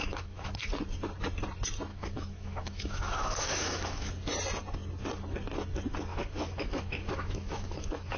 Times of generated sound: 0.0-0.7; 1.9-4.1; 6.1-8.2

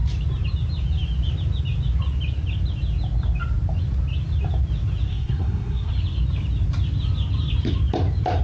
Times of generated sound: 5.1-5.9

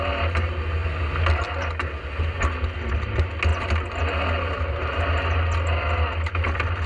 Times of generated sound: none

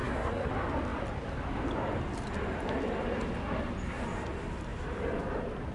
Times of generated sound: 0.0-0.5

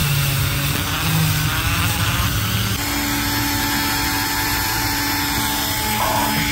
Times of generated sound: none

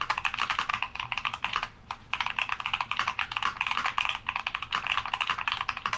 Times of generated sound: none

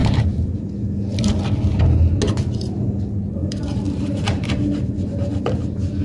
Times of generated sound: 0.0-0.7; 3.4-5.4

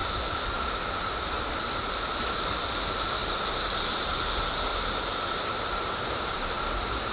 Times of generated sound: none